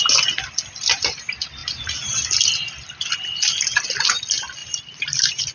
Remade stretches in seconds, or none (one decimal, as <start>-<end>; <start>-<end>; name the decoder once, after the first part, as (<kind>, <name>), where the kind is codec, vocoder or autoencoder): 1.6-2.2 (vocoder, BigVGAN v2); 4.6-5.5